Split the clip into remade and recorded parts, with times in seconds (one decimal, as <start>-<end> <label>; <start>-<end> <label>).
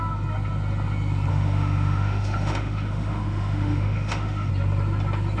0.0-1.3 recorded; 1.3-4.5 remade; 4.5-5.4 recorded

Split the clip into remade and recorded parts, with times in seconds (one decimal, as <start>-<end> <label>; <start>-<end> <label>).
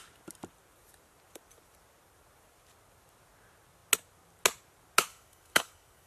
0.0-5.1 recorded; 5.1-6.1 remade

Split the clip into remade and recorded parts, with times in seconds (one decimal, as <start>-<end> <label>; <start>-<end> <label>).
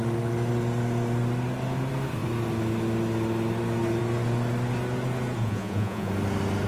0.0-5.4 recorded; 5.4-6.1 remade; 6.1-6.7 recorded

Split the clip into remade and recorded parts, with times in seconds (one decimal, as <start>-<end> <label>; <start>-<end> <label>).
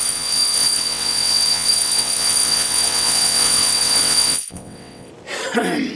0.0-5.1 remade; 5.1-6.0 recorded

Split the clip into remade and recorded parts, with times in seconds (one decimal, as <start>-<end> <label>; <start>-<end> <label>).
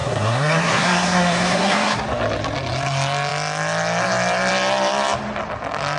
0.0-2.0 remade; 2.0-6.0 recorded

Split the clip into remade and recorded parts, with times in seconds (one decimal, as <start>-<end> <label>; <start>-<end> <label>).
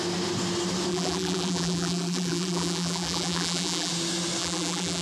0.0-0.9 recorded; 0.9-3.9 remade; 3.9-4.4 recorded; 4.4-5.0 remade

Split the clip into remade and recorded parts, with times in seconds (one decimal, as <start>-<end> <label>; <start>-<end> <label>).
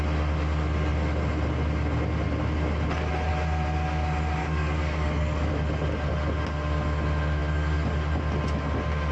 0.0-4.4 recorded; 4.4-5.5 remade; 5.5-9.1 recorded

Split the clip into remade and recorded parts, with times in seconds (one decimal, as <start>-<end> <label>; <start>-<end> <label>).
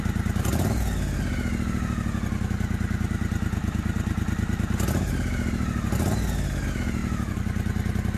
0.0-8.2 recorded